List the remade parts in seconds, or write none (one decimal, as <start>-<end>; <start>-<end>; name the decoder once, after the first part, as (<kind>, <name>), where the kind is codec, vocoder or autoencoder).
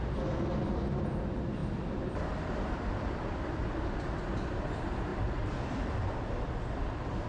1.6-3.9 (vocoder, BigVGAN v2); 5.1-6.5